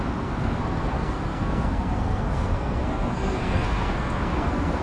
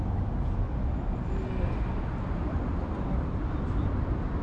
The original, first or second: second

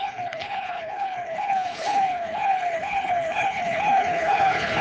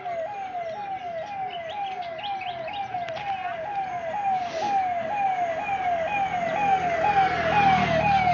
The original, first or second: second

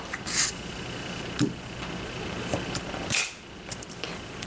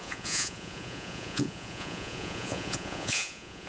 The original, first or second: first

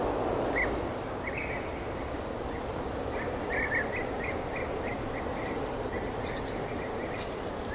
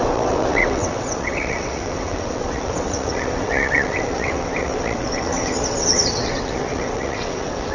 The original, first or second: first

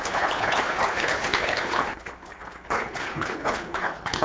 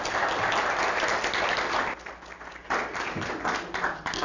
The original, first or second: second